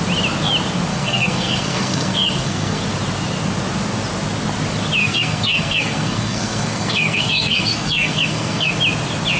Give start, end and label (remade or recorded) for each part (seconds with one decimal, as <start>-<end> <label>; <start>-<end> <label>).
0.0-0.9 recorded; 0.9-2.8 remade; 2.8-5.0 recorded; 5.0-8.7 remade; 8.7-9.4 recorded